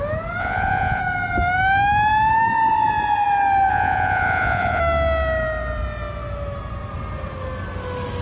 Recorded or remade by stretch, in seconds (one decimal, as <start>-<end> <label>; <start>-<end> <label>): 0.0-0.4 recorded; 0.4-1.0 remade; 1.0-3.7 recorded; 3.7-4.8 remade; 4.8-8.2 recorded